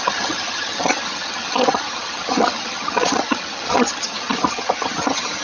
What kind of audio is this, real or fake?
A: fake